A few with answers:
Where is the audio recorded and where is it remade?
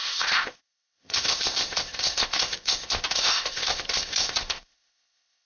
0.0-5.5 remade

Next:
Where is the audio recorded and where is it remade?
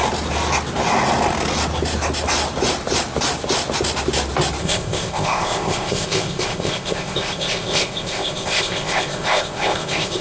0.0-4.6 recorded; 4.6-10.2 remade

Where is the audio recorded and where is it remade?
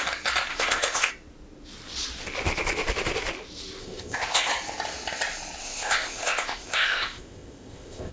0.0-0.5 recorded; 0.5-1.1 remade; 1.1-3.8 recorded; 3.8-4.5 remade; 4.5-5.6 recorded; 5.6-8.1 remade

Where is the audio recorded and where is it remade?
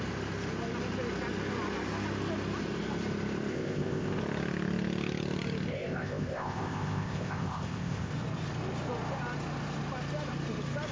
0.0-3.5 recorded; 3.5-4.2 remade; 4.2-5.7 recorded; 5.7-8.1 remade; 8.1-10.9 recorded